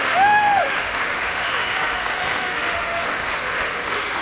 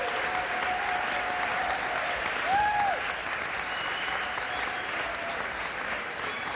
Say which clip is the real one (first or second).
second